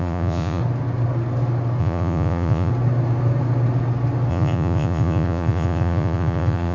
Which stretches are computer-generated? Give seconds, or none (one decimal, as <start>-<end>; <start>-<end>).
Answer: 0.0-0.6; 1.8-2.7; 4.3-6.7